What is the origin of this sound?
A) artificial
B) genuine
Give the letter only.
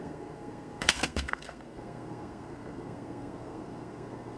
A